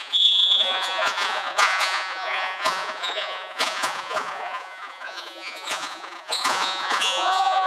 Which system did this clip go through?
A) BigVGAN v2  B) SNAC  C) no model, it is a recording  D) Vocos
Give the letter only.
D